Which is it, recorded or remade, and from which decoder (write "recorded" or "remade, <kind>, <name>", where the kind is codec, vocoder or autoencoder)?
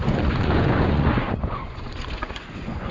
remade, vocoder, Vocos